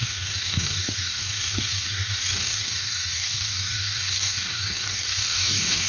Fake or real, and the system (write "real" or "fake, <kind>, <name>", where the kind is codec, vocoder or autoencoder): fake, codec, DAC